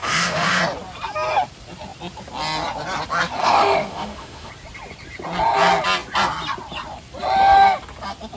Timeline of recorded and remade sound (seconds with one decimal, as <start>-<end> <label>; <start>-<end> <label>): 0.0-0.6 remade; 0.6-3.4 recorded; 3.4-4.5 remade; 4.5-8.4 recorded

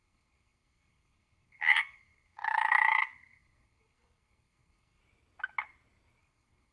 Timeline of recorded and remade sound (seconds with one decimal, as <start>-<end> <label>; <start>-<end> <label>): 0.0-5.0 remade; 5.0-6.2 recorded; 6.2-6.7 remade

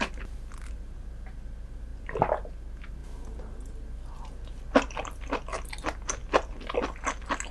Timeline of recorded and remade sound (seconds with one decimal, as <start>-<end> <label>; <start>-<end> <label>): 0.0-7.5 recorded

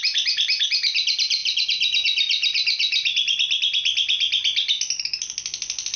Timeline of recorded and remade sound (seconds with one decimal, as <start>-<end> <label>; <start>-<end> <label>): 0.0-6.0 recorded

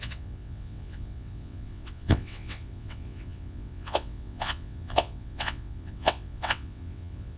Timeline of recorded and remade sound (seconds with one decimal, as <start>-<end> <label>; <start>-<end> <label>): 0.0-7.4 remade

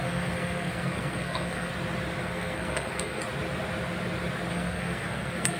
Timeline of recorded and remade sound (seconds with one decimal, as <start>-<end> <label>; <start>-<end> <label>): 0.0-1.7 remade; 1.7-2.2 recorded; 2.2-3.2 remade; 3.2-4.5 recorded; 4.5-5.6 remade